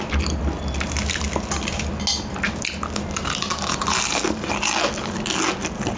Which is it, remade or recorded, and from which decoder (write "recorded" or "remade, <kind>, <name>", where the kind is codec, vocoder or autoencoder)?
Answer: recorded